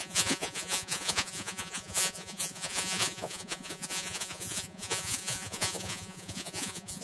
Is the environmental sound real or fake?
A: fake